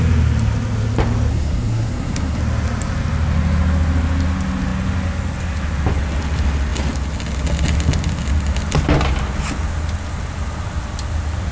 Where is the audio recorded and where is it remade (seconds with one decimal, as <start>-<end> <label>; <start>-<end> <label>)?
0.0-1.3 recorded; 1.3-2.4 remade; 2.4-11.5 recorded